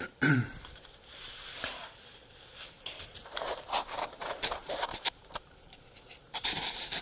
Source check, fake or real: fake